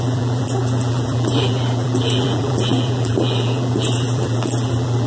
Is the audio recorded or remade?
remade